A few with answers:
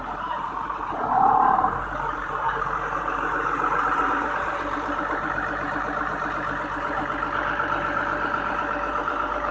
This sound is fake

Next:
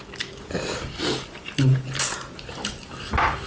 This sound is real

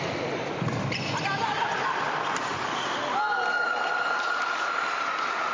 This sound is real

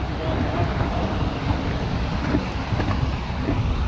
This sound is real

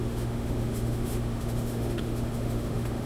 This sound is fake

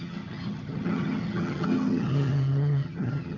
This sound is fake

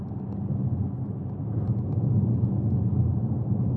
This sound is real